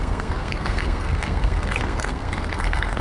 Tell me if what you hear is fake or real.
fake